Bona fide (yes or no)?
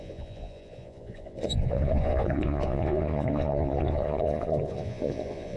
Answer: no